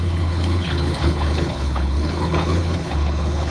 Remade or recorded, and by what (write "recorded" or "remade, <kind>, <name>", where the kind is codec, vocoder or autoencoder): remade, codec, HILCodec